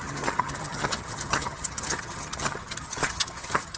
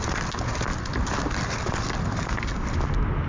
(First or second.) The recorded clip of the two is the second